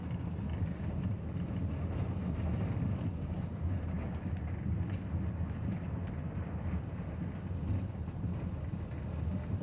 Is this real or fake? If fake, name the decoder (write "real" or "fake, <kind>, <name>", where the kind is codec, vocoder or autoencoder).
real